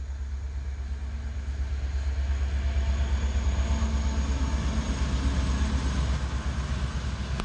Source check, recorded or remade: recorded